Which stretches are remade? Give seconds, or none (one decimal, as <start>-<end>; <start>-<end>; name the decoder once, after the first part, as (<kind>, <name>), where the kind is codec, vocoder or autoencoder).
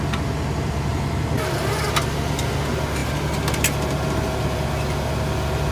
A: 0.9-1.8 (vocoder, BigVGAN v2)